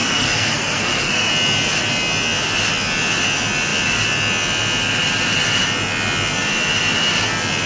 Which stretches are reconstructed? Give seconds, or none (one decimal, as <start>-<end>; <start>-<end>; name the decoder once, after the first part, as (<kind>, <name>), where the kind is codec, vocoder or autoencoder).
0.0-1.3 (codec, SNAC)